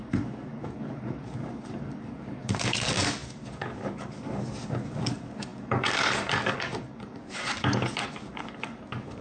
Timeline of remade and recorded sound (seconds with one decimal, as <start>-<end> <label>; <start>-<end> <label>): 0.0-9.2 remade